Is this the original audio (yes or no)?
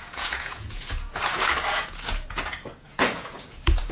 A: no